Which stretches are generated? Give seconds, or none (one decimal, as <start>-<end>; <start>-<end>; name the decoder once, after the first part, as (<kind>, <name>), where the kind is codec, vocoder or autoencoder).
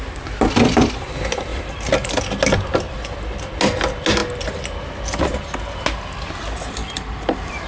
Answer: 1.5-2.2 (vocoder, BigVGAN v2); 6.8-7.7